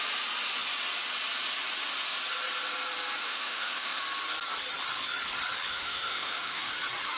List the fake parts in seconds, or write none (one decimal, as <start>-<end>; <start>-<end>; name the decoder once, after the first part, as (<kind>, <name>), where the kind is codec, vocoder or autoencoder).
3.2-4.0 (autoencoder, DAC-VAE); 5.7-6.7